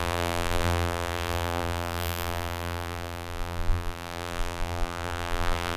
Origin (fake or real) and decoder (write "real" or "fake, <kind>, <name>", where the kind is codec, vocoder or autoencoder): fake, vocoder, BigVGAN v2